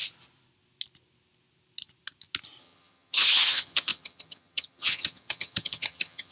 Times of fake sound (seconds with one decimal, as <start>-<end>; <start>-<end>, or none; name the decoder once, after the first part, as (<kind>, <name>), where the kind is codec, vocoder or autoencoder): 2.6-6.3 (vocoder, HiFi-GAN)